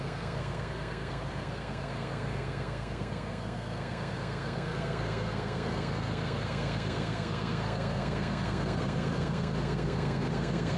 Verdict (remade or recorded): remade